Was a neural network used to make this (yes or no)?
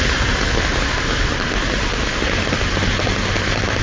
no